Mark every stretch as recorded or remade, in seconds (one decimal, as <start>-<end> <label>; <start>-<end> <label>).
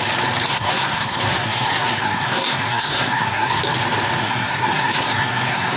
0.0-0.5 recorded; 0.5-3.6 remade; 3.6-4.2 recorded; 4.2-5.8 remade